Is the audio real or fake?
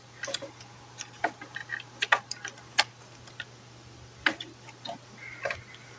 real